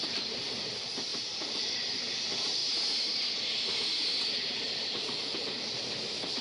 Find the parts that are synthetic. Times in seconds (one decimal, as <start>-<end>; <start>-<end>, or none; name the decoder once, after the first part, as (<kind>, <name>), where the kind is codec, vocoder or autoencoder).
0.0-2.6 (vocoder, BigVGAN v2); 4.3-6.4